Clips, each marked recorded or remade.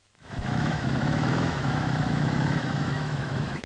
remade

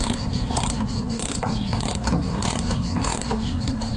remade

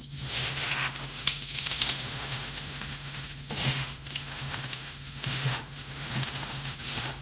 remade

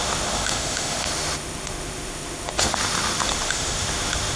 remade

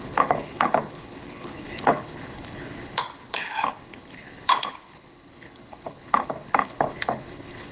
remade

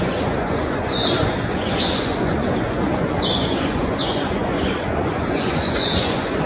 remade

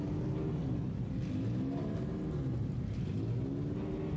recorded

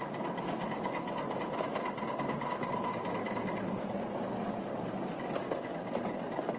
recorded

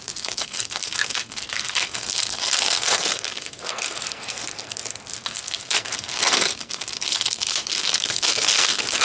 remade